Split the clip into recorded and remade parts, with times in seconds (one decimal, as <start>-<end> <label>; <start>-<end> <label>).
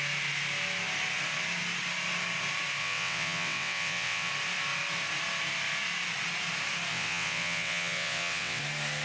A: 0.0-2.8 recorded; 2.8-4.3 remade; 4.3-6.9 recorded; 6.9-8.6 remade; 8.6-9.0 recorded